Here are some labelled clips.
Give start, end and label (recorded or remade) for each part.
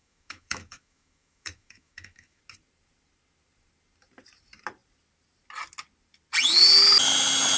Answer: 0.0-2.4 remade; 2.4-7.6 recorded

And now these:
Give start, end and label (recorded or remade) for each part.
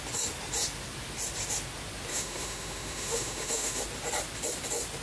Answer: 0.0-2.1 recorded; 2.1-3.8 remade; 3.8-5.0 recorded